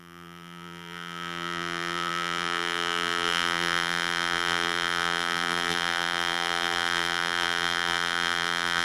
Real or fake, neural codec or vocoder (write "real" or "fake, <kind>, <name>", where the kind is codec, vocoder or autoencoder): fake, vocoder, BigVGAN v2